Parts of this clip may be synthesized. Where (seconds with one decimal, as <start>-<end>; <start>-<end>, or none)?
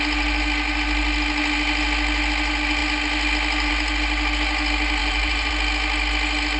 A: 5.0-5.5